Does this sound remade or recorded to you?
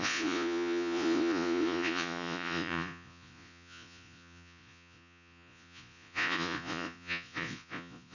remade